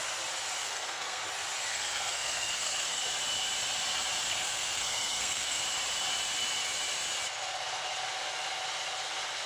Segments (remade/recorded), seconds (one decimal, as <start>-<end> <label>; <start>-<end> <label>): 0.0-0.6 recorded; 0.6-1.2 remade; 1.2-1.7 recorded; 1.7-3.0 remade; 3.0-4.3 recorded; 4.3-5.6 remade; 5.6-9.5 recorded